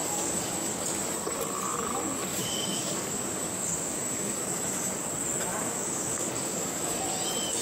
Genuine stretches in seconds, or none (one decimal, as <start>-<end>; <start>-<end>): 0.8-2.3; 5.1-5.5; 7.0-7.6